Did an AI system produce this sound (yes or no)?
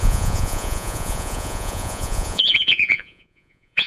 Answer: yes